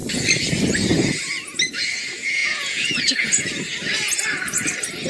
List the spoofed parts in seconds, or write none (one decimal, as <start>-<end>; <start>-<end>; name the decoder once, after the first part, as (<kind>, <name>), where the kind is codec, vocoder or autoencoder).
2.4-3.5 (vocoder, Vocos)